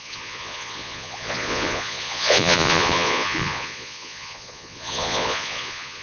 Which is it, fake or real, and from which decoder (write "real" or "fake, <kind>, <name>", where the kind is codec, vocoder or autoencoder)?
fake, vocoder, Vocos